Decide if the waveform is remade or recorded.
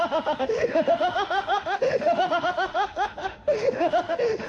remade